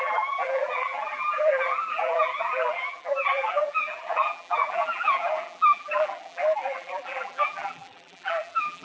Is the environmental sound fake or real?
fake